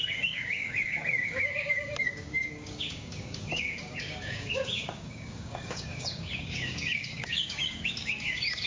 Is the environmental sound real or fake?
fake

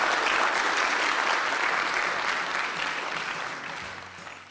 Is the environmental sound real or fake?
real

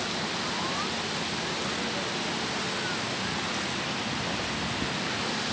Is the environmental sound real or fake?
real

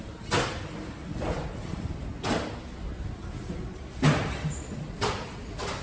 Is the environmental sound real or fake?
real